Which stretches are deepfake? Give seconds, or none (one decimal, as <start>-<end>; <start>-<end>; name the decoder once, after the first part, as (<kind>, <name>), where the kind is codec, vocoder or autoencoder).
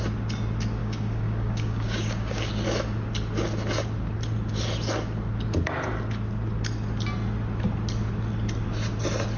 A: 0.8-2.5 (codec, DAC)